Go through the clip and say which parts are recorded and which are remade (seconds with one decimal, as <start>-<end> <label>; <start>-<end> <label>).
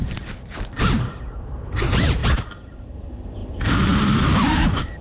0.0-1.6 remade; 1.6-2.2 recorded; 2.2-3.0 remade; 3.0-3.4 recorded; 3.4-5.0 remade